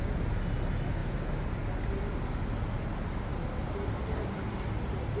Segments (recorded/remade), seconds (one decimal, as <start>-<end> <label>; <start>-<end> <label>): 0.0-5.2 recorded